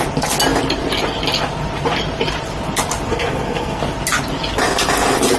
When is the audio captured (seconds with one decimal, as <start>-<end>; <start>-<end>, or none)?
0.0-3.1; 3.8-5.4